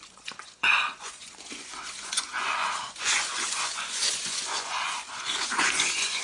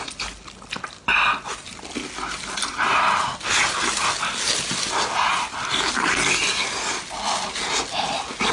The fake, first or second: first